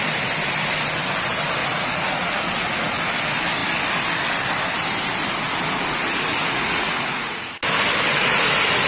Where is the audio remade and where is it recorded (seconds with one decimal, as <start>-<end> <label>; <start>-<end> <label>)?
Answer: 0.0-1.6 recorded; 1.6-3.0 remade; 3.0-6.3 recorded; 6.3-7.6 remade; 7.6-8.9 recorded